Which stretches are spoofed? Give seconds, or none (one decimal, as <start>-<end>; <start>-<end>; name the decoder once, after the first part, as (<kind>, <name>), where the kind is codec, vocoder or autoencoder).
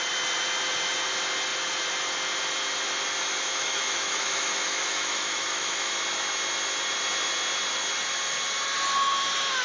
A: 3.5-5.9 (autoencoder, DAC-VAE)